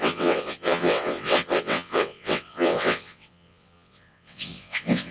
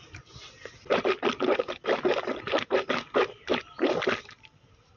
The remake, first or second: first